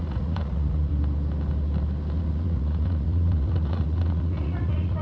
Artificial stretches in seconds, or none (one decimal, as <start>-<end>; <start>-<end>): 0.0-0.9; 2.2-5.0